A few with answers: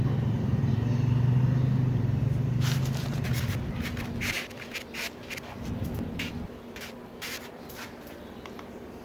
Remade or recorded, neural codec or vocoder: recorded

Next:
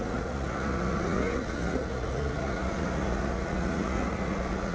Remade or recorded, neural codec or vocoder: remade, vocoder, Vocos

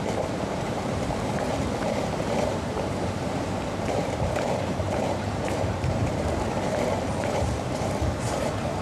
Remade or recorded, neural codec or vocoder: remade, vocoder, BigVGAN v2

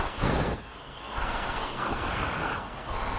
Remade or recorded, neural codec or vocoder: remade, codec, SNAC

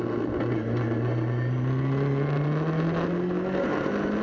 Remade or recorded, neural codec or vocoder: recorded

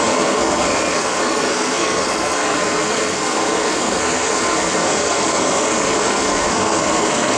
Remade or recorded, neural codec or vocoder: remade, codec, SNAC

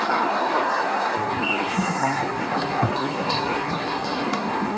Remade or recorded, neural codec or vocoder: remade, codec, SNAC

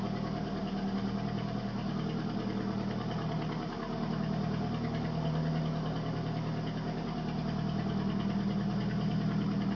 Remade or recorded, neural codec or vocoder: recorded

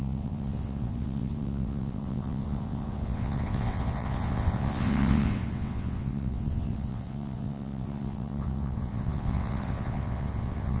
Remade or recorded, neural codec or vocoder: remade, vocoder, WaveNeXt